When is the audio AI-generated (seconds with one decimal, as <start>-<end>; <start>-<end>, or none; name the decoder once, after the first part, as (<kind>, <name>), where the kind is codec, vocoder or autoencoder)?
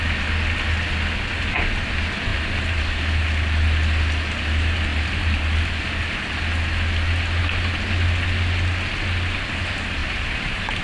2.3-2.8 (vocoder, BigVGAN v2); 10.0-10.8